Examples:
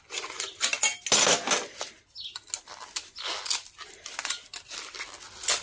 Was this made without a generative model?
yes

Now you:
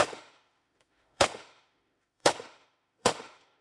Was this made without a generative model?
no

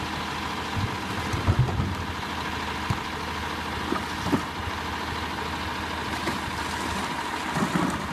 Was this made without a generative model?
yes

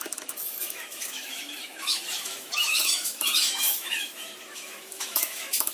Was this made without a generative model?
no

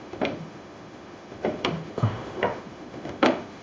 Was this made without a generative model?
no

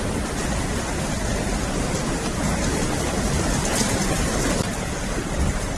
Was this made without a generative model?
yes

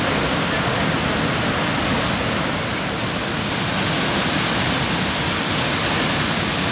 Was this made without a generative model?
yes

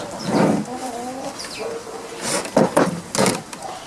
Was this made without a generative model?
yes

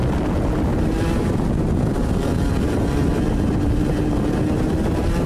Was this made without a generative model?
yes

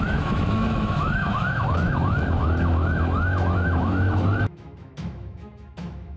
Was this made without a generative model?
no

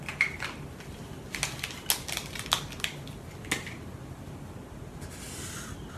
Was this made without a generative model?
yes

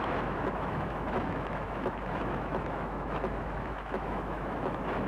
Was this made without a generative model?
no